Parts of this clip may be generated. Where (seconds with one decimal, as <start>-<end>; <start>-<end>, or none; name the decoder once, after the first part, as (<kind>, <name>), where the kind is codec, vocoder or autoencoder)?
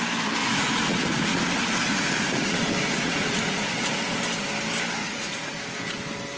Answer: 0.4-4.2 (vocoder, Vocos); 5.0-5.6